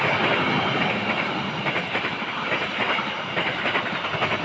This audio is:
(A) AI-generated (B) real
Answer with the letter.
B